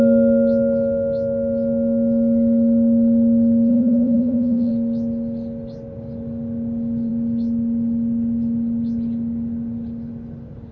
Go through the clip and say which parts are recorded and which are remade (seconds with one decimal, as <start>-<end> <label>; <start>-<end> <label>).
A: 0.0-3.7 recorded; 3.7-4.7 remade; 4.7-10.7 recorded